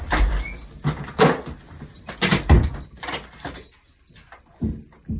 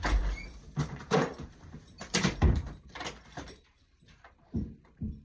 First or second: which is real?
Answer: first